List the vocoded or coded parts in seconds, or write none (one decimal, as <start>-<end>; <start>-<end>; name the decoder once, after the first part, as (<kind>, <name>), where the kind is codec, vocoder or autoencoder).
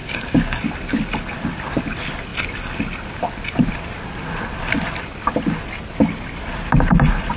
0.0-0.6 (codec, DAC)